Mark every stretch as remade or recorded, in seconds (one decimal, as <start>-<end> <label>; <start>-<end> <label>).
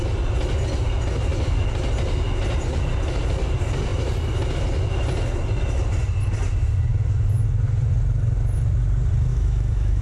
0.0-9.3 recorded; 9.3-10.0 remade